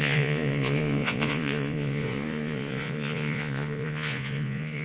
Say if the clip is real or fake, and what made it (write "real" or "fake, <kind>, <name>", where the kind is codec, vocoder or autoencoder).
fake, vocoder, Vocos